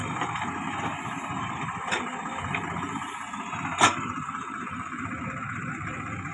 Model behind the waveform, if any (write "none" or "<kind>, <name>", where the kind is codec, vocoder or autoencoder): vocoder, BigVGAN v2